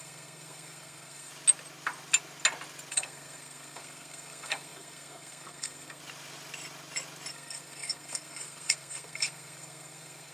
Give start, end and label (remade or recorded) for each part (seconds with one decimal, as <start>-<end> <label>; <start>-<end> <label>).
0.0-1.3 remade; 1.3-2.9 recorded; 2.9-6.0 remade; 6.0-7.3 recorded; 7.3-10.3 remade